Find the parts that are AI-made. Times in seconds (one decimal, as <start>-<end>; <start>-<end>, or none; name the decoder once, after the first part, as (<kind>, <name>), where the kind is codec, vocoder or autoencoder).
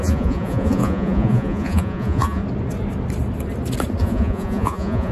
0.0-2.4 (vocoder, Vocos); 4.0-5.1